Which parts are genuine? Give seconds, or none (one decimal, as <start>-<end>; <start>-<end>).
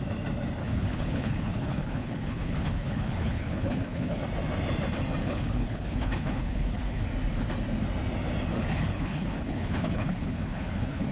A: 0.0-0.6; 4.2-5.2; 7.0-8.5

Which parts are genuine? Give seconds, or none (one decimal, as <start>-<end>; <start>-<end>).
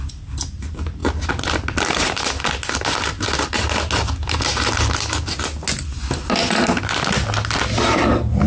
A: 0.0-8.5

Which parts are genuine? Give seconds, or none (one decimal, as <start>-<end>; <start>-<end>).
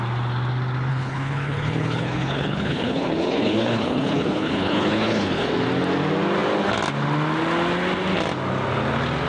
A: 0.0-0.9; 5.5-9.3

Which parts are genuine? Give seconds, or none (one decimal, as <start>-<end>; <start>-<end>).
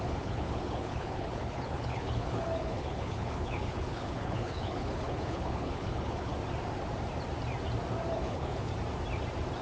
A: 6.3-8.1; 8.7-9.6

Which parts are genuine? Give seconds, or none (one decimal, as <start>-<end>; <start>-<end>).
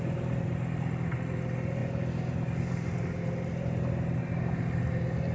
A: 0.0-5.3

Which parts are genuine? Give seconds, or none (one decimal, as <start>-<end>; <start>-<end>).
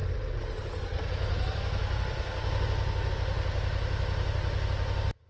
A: 0.0-5.3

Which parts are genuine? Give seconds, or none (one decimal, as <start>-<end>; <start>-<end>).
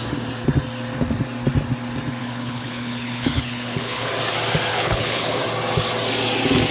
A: 0.0-2.2; 4.1-4.7; 5.4-6.7